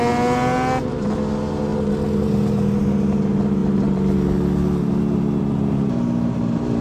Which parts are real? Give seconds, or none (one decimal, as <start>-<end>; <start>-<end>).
0.0-6.8